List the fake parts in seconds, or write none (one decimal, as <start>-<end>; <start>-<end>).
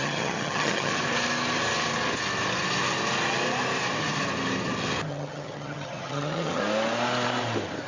0.0-0.9; 5.1-6.6